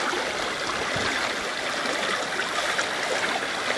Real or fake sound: real